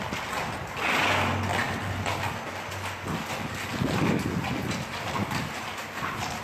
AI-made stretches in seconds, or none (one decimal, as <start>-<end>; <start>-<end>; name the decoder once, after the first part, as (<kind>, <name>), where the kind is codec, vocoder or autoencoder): 5.2-6.4 (vocoder, BigVGAN v2)

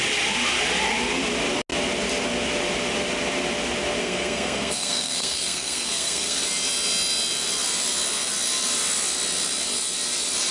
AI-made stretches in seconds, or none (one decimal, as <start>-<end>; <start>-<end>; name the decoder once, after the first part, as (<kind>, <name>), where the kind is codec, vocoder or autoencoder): 4.0-6.4 (codec, SNAC)

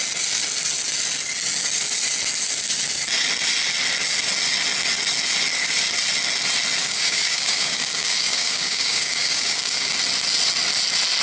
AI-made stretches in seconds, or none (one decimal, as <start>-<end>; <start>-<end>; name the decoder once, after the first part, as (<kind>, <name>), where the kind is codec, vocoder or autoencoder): 6.8-9.9 (codec, DAC)

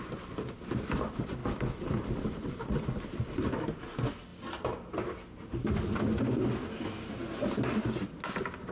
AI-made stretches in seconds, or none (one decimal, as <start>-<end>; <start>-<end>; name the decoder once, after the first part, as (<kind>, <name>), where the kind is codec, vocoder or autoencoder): 1.4-2.8 (vocoder, BigVGAN v2)